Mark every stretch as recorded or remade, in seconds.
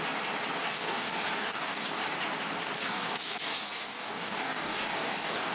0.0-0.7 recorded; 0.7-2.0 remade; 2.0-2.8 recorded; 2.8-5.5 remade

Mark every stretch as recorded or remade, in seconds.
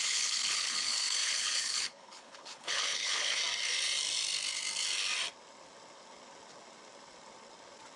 0.0-3.4 remade; 3.4-8.0 recorded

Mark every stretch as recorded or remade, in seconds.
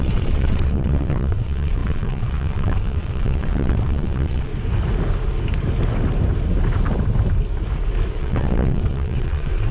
0.0-4.5 remade; 4.5-8.1 recorded; 8.1-9.7 remade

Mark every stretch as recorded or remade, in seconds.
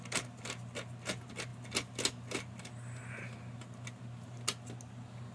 0.0-5.3 recorded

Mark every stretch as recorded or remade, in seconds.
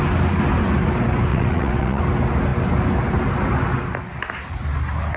0.0-1.3 recorded; 1.3-2.0 remade; 2.0-5.2 recorded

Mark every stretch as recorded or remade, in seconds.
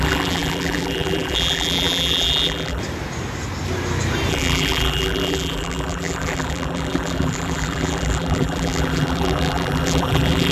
0.0-2.8 remade; 2.8-4.3 recorded; 4.3-10.5 remade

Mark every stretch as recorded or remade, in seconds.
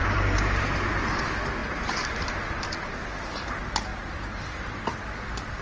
0.0-0.6 remade; 0.6-3.9 recorded; 3.9-4.7 remade; 4.7-5.6 recorded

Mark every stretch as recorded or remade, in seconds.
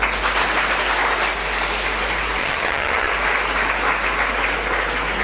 0.0-2.4 recorded; 2.4-3.1 remade; 3.1-5.2 recorded